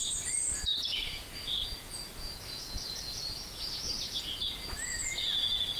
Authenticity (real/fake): fake